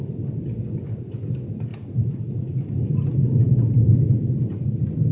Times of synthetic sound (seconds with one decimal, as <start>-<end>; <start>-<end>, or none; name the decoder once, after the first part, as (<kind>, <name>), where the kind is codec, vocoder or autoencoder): none